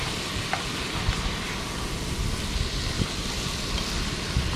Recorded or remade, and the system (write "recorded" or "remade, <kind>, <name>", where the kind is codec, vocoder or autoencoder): recorded